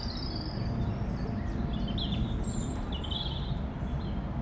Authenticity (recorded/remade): remade